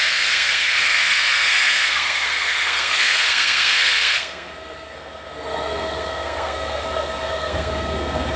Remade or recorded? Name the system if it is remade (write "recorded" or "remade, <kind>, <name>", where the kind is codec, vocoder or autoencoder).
remade, codec, SNAC